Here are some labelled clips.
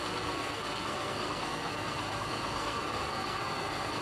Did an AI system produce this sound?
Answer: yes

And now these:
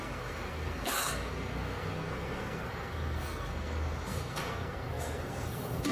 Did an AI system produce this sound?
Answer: yes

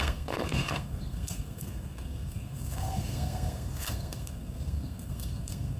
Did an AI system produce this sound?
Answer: yes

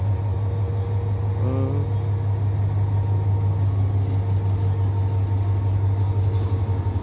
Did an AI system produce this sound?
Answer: no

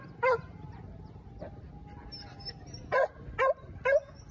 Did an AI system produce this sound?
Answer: no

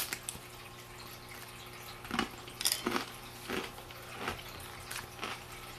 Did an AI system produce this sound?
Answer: no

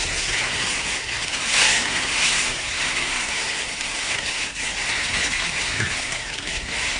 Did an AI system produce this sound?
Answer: yes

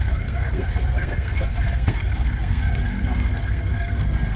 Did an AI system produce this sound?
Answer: yes